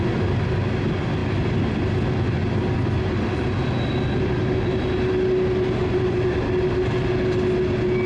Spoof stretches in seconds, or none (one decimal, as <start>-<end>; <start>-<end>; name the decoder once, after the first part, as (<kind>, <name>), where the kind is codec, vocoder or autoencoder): none

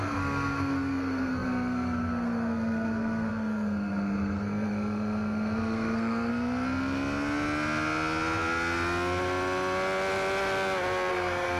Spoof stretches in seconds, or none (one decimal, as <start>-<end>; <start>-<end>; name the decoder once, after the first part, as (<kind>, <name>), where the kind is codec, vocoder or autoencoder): 0.0-6.3 (codec, SNAC); 11.1-11.6

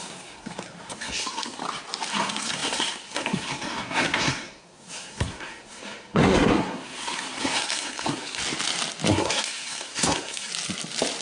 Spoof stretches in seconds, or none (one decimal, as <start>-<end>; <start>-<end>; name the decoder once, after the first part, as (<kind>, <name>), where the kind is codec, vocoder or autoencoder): 0.0-1.6 (codec, SNAC); 2.1-8.4; 9.1-10.5